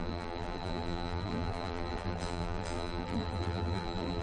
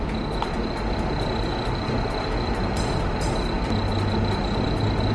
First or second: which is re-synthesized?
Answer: first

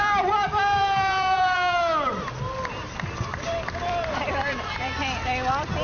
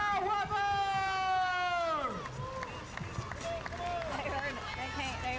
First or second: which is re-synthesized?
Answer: first